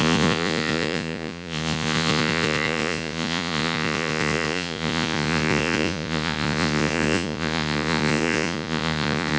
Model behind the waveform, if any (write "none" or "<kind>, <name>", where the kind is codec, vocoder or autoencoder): vocoder, Vocos